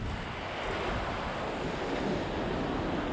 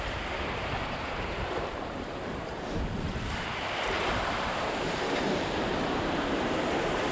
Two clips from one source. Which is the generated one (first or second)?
second